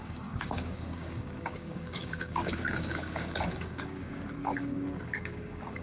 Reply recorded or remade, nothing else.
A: remade